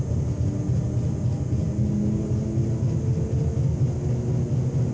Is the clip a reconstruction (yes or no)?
no